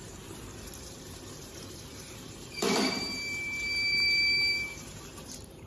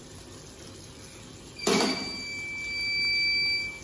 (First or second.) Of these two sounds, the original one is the second